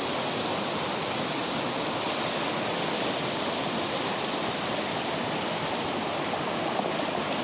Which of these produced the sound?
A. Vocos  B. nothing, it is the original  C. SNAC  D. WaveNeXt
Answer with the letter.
B